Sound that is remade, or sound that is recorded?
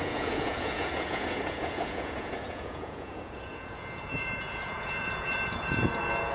remade